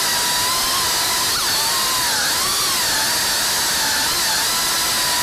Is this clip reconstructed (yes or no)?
no